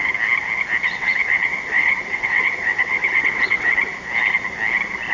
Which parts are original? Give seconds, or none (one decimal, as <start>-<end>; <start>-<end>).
0.0-0.8; 3.7-5.1